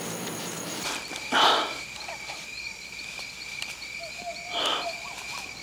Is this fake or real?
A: fake